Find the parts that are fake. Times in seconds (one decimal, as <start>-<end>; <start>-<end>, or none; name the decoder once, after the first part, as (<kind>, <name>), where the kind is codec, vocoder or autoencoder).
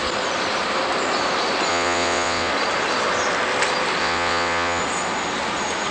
1.7-2.5 (vocoder, WaveNeXt); 4.0-4.8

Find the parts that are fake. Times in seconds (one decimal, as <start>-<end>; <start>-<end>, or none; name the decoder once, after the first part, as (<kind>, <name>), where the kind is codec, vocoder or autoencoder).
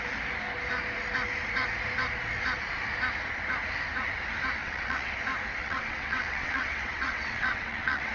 4.6-5.1 (vocoder, WaveNeXt); 5.6-8.1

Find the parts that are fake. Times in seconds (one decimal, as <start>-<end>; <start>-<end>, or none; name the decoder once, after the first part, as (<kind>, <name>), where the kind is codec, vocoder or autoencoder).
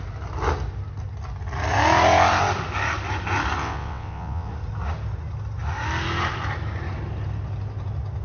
3.6-4.5 (vocoder, WaveNeXt)